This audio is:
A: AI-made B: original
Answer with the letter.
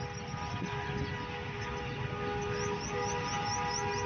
B